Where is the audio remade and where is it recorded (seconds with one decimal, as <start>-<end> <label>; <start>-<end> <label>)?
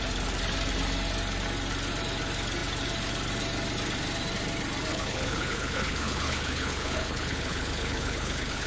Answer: 0.0-4.9 recorded; 4.9-8.7 remade